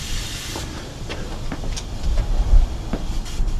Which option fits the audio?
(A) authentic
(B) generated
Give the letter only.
A